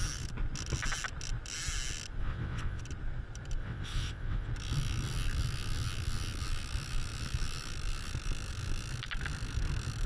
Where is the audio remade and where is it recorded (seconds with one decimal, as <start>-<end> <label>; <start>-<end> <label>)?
0.0-2.2 recorded; 2.2-2.8 remade; 2.8-3.6 recorded; 3.6-4.5 remade; 4.5-10.1 recorded